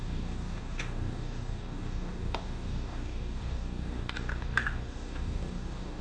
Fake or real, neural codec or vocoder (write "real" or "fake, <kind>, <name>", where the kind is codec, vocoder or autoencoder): fake, codec, DAC